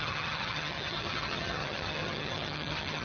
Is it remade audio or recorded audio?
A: remade